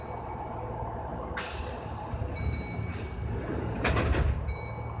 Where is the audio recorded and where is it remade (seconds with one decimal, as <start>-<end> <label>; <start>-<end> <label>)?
0.0-5.0 recorded